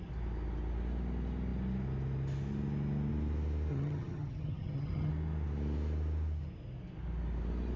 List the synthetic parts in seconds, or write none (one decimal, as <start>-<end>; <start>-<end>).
3.7-5.1